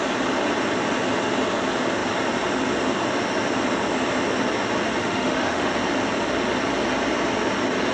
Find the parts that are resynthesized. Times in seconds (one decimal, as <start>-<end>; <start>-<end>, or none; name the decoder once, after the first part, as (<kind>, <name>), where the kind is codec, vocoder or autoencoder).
5.0-5.7 (autoencoder, DAC-VAE)

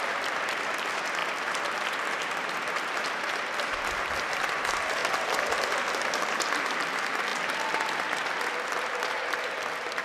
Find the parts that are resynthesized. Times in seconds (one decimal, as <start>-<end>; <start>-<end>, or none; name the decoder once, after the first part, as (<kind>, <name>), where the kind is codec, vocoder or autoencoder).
none